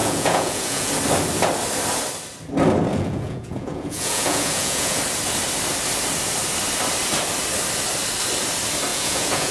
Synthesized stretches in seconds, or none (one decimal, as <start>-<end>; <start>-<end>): 0.0-0.9; 2.9-5.0; 8.9-9.5